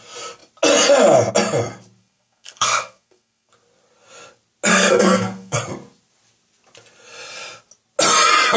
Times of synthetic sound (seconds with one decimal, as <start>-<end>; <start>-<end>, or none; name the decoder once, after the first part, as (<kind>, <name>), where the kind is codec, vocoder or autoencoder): 2.0-3.5 (codec, SNAC); 4.7-5.6